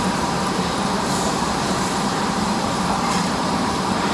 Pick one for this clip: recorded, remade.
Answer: remade